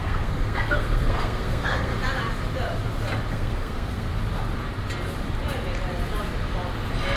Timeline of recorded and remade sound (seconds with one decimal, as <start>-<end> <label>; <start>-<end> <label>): 0.0-1.9 remade; 1.9-3.3 recorded; 3.3-4.1 remade; 4.1-7.2 recorded

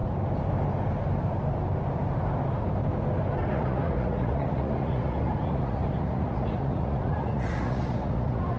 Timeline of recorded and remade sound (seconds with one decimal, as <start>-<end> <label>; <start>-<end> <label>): 0.0-3.5 recorded; 3.5-8.6 remade

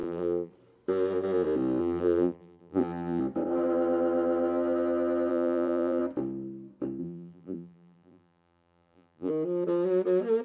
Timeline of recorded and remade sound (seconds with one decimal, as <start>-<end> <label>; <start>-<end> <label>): 0.0-0.5 remade; 0.5-1.8 recorded; 1.8-3.2 remade; 3.2-5.3 recorded; 5.3-6.0 remade; 6.0-7.0 recorded; 7.0-9.3 remade; 9.3-10.4 recorded

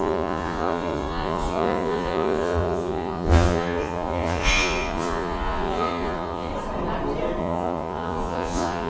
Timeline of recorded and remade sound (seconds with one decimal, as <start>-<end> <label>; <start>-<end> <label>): 0.0-6.5 remade; 6.5-7.4 recorded; 7.4-8.9 remade